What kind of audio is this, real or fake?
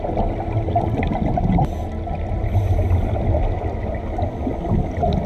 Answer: real